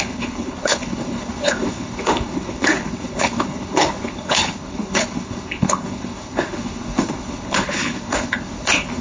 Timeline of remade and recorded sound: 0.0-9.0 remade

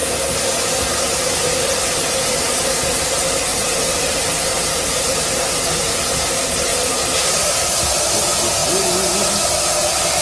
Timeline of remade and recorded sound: 0.0-3.5 recorded; 3.5-5.6 remade; 5.6-6.7 recorded; 6.7-7.8 remade; 7.8-10.2 recorded